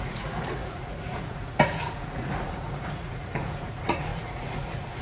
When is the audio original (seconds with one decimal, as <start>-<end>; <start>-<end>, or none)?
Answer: none